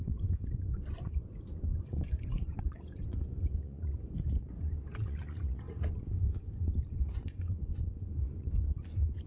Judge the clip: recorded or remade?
remade